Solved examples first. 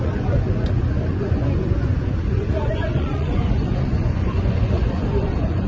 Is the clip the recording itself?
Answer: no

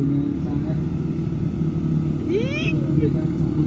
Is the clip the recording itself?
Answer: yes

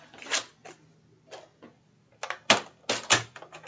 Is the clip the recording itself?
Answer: yes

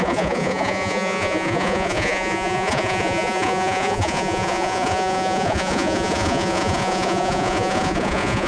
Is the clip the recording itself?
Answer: no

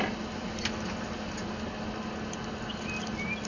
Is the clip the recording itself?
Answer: yes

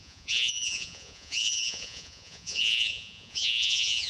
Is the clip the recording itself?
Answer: no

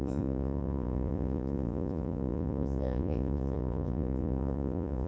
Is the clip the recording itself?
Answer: no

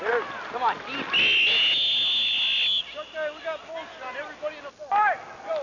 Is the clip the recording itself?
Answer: yes